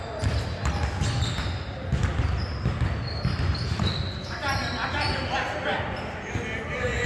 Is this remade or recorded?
recorded